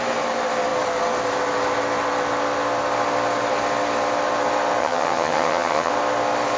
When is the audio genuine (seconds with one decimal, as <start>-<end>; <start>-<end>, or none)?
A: 0.0-4.8; 5.9-6.6